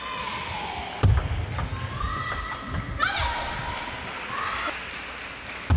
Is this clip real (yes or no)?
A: yes